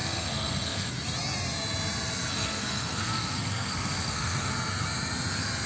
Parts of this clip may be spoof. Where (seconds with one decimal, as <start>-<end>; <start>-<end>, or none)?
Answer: 0.0-0.9; 2.3-4.5